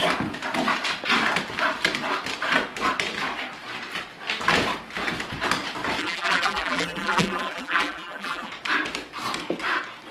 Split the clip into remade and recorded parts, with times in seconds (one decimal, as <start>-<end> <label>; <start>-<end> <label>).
0.0-6.0 recorded; 6.0-8.5 remade; 8.5-10.1 recorded